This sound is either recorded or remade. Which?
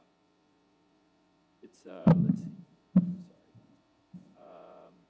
remade